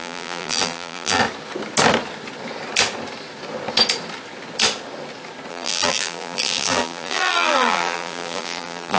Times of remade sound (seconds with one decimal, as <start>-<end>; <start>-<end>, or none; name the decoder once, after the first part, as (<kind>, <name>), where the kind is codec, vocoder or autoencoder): 0.0-1.2 (vocoder, BigVGAN v2); 5.5-9.0